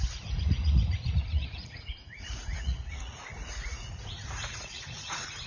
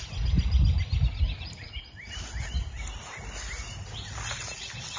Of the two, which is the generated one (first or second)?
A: first